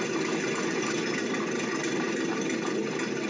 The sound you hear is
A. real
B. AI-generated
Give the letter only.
A